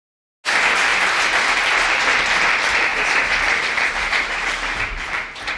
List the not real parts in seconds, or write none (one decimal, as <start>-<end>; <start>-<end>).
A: 2.9-4.8